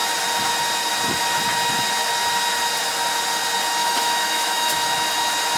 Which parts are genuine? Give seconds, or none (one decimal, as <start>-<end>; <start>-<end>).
0.0-3.8; 4.9-5.6